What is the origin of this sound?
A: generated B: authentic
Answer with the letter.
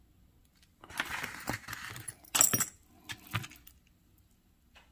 B